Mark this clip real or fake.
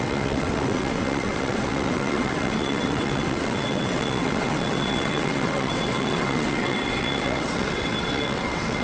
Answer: fake